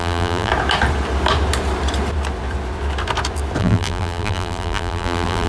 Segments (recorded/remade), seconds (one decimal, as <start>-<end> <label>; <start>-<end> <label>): 0.0-0.5 remade; 0.5-3.6 recorded; 3.6-5.5 remade